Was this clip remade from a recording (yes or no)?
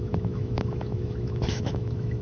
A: yes